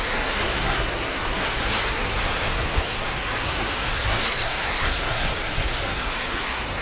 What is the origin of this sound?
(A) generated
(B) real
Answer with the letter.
A